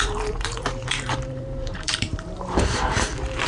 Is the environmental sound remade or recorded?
remade